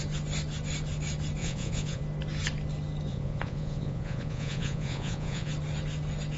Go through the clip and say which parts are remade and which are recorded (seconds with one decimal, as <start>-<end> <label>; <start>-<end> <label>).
0.0-1.4 recorded; 1.4-2.0 remade; 2.0-3.1 recorded; 3.1-5.5 remade; 5.5-6.4 recorded